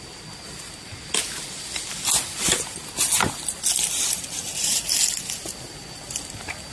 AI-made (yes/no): no